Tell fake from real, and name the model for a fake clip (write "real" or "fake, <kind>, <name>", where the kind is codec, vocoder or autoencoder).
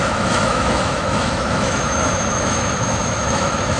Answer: fake, autoencoder, DAC-VAE